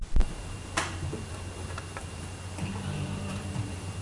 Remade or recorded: remade